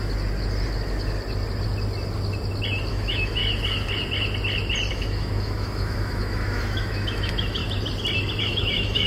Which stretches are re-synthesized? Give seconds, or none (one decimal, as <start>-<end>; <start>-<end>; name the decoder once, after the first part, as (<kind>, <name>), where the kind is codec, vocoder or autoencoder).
2.9-3.4 (autoencoder, DAC-VAE); 4.9-7.6; 8.4-9.1